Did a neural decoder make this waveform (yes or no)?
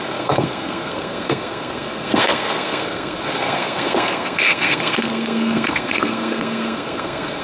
yes